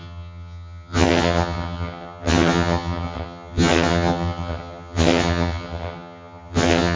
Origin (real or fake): fake